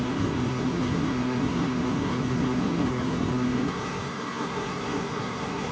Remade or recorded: remade